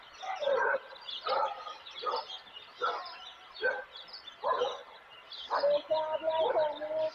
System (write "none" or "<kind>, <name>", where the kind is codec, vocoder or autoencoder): none